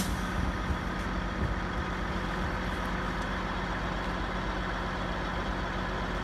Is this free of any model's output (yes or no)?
yes